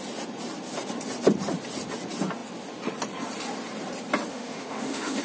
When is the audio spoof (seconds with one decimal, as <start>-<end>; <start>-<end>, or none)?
4.3-5.2